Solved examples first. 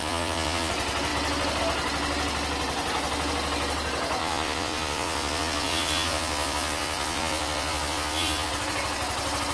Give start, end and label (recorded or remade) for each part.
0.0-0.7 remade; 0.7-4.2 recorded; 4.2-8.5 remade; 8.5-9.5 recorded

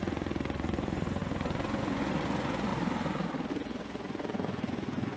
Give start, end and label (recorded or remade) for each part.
0.0-2.7 remade; 2.7-3.5 recorded; 3.5-5.2 remade

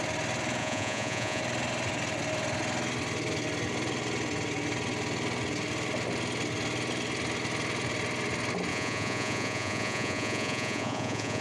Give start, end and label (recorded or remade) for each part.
0.0-0.6 recorded; 0.6-1.4 remade; 1.4-8.7 recorded; 8.7-11.4 remade

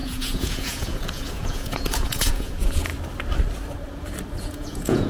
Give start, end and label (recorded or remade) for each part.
0.0-2.9 remade; 2.9-4.4 recorded; 4.4-5.1 remade

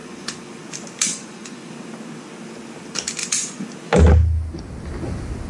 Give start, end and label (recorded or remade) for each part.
0.0-0.6 remade; 0.6-1.1 recorded; 1.1-1.7 remade; 1.7-3.2 recorded; 3.2-3.7 remade; 3.7-5.5 recorded

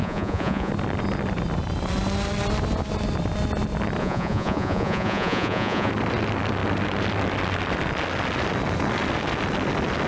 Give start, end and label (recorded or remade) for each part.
0.0-0.7 remade; 0.7-4.0 recorded; 4.0-5.9 remade; 5.9-10.1 recorded

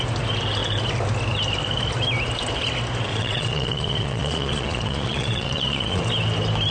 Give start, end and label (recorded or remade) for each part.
0.0-3.1 recorded; 3.1-6.0 remade; 6.0-6.7 recorded